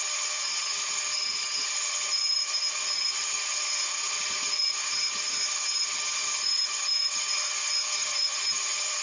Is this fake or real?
fake